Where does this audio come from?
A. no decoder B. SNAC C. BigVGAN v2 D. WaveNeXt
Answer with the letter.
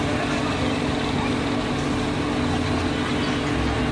A